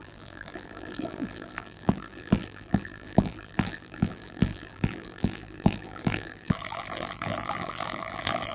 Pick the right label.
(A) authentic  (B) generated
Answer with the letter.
B